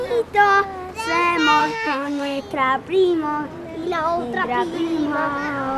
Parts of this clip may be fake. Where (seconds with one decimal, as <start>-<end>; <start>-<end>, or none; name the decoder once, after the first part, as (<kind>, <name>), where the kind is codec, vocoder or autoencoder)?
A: 1.6-2.4 (autoencoder, DAC-VAE)